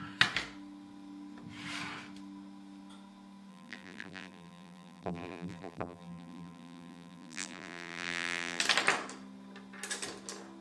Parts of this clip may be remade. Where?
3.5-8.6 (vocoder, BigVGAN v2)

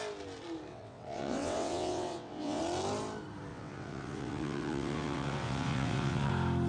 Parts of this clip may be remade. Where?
0.7-2.6 (vocoder, WaveNeXt); 3.5-6.3

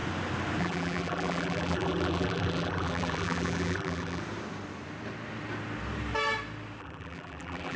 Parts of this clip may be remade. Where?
0.6-4.2 (vocoder, BigVGAN v2); 6.8-7.8

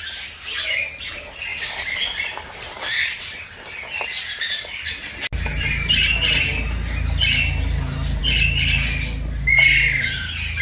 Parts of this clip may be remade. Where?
1.5-4.9 (vocoder, BigVGAN v2)

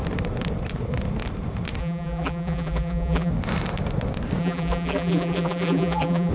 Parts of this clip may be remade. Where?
1.8-3.3 (vocoder, BigVGAN v2); 4.4-6.3